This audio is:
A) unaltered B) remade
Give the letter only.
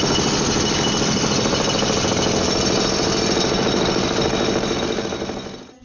A